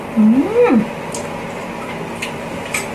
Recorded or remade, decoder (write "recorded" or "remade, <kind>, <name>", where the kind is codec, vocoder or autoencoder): recorded